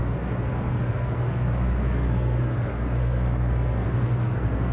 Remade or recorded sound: remade